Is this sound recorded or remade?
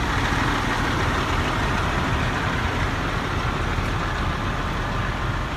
remade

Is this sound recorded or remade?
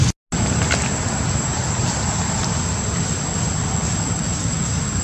recorded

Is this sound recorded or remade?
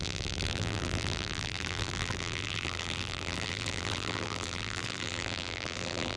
remade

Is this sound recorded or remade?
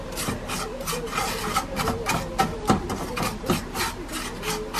recorded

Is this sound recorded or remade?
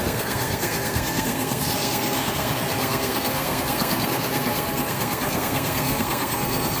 remade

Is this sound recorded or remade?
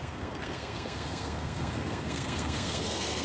remade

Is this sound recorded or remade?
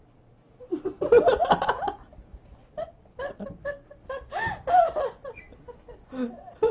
recorded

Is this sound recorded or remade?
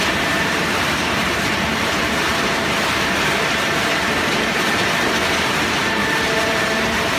remade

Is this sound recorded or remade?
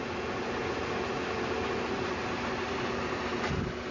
recorded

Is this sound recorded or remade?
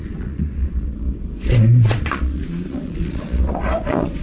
remade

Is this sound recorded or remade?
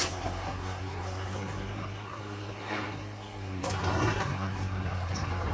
remade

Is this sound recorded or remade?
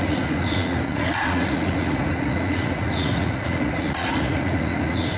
remade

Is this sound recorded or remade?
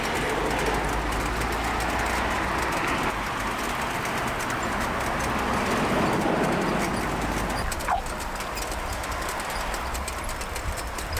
recorded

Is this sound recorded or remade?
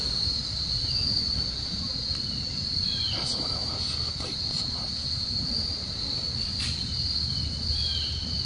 recorded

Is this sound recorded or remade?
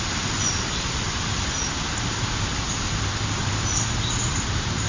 recorded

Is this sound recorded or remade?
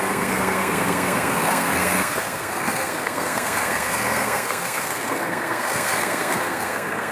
remade